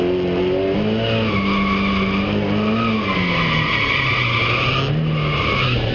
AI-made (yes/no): no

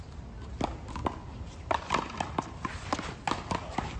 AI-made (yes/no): no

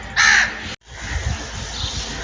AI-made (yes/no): no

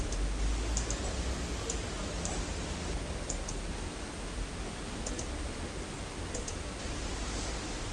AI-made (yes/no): no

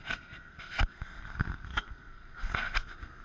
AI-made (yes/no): yes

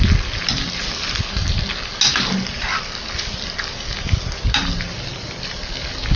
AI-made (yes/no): no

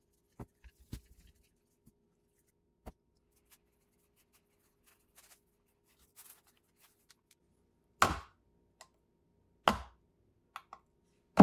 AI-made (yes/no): no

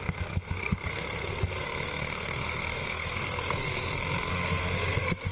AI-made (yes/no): yes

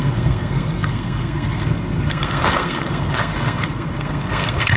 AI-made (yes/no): yes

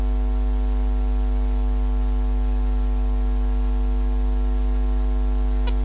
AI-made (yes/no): no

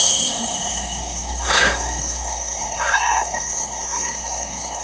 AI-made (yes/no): yes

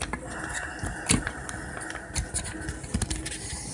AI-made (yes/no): no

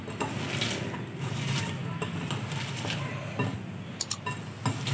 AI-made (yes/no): no